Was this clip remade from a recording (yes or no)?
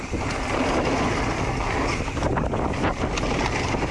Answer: no